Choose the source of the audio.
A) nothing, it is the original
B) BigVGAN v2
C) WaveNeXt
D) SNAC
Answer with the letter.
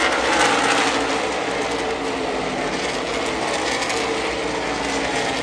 A